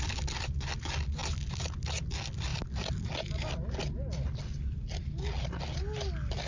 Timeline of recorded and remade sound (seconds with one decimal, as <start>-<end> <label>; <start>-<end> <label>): 0.0-6.5 recorded